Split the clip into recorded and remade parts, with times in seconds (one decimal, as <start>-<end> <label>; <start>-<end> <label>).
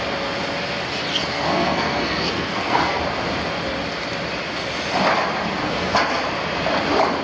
0.0-1.1 recorded; 1.1-3.0 remade; 3.0-5.6 recorded; 5.6-6.2 remade; 6.2-7.2 recorded